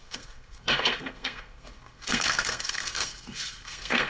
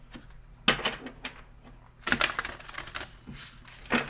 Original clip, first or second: second